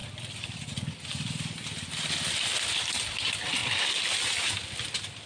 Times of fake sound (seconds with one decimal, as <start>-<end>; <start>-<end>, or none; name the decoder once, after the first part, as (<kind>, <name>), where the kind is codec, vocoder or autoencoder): none